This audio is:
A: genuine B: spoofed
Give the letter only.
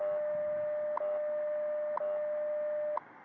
A